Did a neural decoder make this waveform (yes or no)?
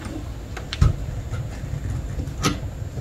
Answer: no